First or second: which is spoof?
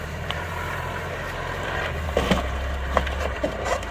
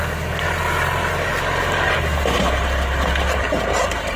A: first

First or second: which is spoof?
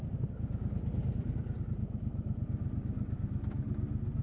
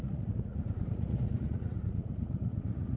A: second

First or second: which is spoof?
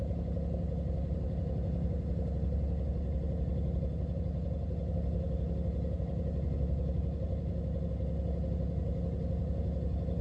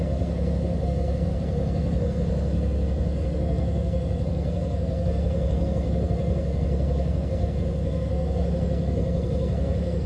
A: second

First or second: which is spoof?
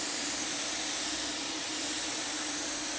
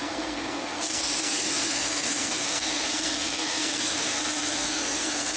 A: second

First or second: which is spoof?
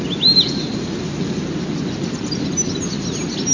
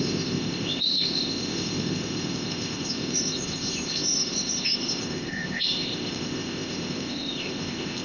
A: second